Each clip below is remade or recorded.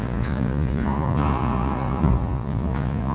remade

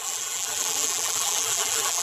remade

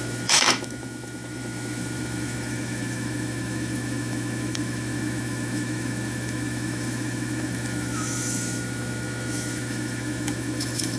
remade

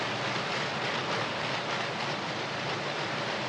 recorded